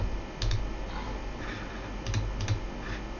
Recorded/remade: recorded